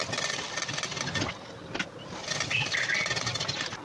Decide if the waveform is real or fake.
real